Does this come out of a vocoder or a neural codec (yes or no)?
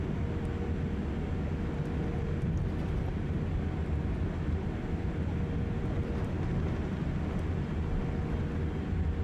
no